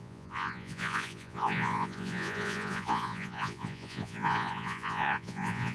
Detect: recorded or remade remade